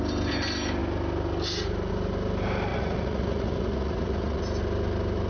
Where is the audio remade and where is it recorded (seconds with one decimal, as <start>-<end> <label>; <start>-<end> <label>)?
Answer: 0.0-2.7 recorded; 2.7-4.4 remade; 4.4-5.3 recorded